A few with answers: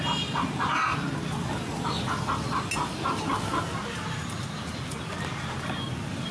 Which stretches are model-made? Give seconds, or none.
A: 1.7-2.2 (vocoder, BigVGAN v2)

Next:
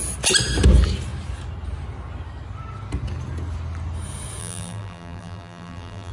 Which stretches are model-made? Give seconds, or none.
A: 4.4-6.1 (vocoder, BigVGAN v2)

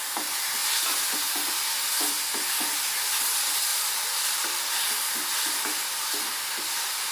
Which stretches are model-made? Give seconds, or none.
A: 3.7-4.8 (vocoder, BigVGAN v2)

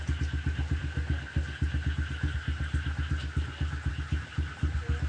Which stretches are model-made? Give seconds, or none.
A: none